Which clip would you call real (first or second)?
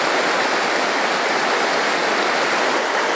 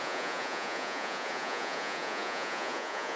first